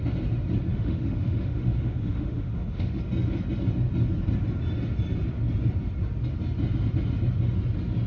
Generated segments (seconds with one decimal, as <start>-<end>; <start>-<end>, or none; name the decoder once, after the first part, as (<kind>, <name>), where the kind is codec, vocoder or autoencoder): 0.7-3.0 (autoencoder, DAC-VAE)